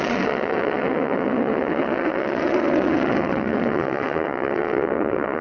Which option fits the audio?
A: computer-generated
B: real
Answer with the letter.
A